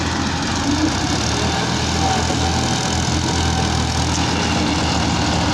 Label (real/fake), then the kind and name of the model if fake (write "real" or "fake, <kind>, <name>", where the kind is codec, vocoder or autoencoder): real